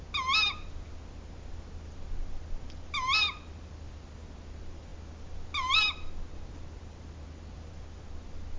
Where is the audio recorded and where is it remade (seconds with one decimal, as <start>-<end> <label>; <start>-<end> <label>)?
0.0-8.6 recorded

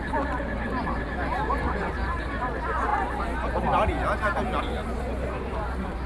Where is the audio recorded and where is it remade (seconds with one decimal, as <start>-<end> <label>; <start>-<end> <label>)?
0.0-2.9 remade; 2.9-4.6 recorded; 4.6-6.1 remade

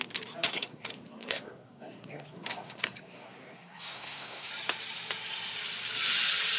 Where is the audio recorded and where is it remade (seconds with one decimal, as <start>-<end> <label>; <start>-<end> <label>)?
0.0-0.5 recorded; 0.5-4.5 remade; 4.5-6.6 recorded

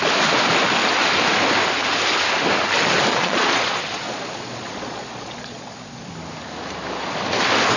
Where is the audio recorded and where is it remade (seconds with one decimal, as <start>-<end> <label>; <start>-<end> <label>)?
0.0-3.1 recorded; 3.1-6.1 remade; 6.1-7.8 recorded

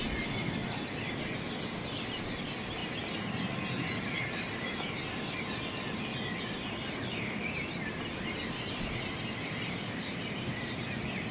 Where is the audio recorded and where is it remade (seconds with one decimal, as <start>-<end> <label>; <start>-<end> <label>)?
0.0-11.3 recorded

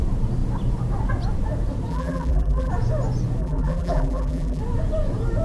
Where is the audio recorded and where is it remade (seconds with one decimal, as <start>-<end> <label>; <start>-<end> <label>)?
0.0-1.9 recorded; 1.9-2.7 remade; 2.7-3.4 recorded; 3.4-4.6 remade; 4.6-5.4 recorded

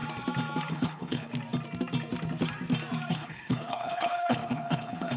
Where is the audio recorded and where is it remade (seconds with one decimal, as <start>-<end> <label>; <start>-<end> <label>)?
0.0-0.7 recorded; 0.7-1.3 remade; 1.3-3.1 recorded; 3.1-5.2 remade